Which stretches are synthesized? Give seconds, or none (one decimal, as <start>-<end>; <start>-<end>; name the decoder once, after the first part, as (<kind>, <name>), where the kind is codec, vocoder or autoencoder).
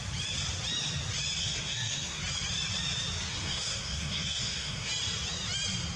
1.4-2.2 (codec, SNAC); 3.3-4.9